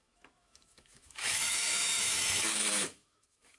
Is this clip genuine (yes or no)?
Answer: no